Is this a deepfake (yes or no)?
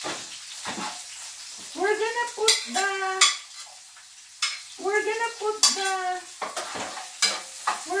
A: no